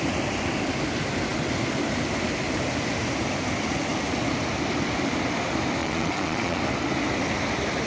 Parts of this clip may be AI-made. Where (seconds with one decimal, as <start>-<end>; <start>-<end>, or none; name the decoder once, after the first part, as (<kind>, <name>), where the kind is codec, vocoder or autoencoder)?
5.8-6.6 (vocoder, Vocos)